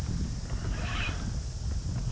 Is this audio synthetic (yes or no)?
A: no